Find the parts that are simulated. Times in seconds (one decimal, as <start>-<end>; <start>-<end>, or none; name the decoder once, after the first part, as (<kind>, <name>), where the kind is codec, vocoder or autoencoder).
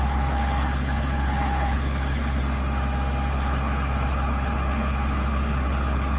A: 0.0-2.4 (codec, HILCodec); 3.3-6.2